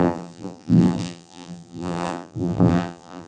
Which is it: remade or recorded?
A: remade